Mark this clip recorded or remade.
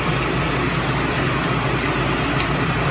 recorded